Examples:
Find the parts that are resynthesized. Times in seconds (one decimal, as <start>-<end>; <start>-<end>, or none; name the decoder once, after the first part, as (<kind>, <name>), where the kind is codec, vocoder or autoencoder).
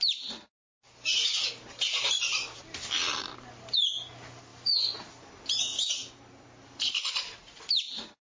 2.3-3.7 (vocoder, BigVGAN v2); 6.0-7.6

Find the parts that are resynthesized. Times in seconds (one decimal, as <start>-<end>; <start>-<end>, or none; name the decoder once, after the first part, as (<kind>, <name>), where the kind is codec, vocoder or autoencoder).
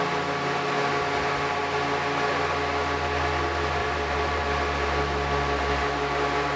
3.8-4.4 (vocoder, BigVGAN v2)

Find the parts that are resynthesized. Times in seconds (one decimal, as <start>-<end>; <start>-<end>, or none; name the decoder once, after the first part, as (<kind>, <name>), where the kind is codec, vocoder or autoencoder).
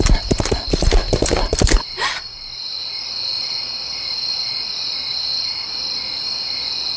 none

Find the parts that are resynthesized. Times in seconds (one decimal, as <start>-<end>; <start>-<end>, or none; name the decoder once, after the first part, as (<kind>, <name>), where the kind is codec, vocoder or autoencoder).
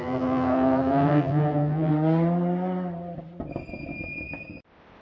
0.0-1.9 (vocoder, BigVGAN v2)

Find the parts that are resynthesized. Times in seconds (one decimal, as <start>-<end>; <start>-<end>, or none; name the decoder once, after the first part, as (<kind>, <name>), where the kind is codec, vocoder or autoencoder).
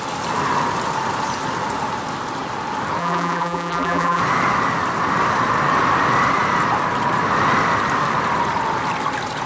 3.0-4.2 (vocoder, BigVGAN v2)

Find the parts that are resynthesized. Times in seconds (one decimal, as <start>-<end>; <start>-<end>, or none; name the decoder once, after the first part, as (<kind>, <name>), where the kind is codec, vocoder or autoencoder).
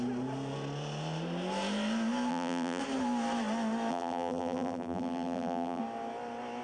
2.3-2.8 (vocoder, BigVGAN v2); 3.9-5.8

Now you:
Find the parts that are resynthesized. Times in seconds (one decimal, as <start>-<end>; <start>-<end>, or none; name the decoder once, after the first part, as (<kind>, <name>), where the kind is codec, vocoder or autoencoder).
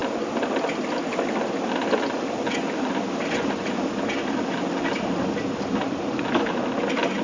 0.0-3.8 (vocoder, BigVGAN v2)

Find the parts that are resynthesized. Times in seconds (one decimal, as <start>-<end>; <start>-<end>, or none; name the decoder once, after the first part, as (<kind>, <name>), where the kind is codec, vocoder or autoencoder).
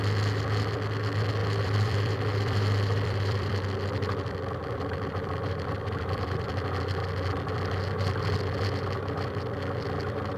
1.4-3.5 (vocoder, BigVGAN v2); 4.6-6.5